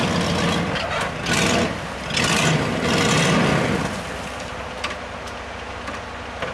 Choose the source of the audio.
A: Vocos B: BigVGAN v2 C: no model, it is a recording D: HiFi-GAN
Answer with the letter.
C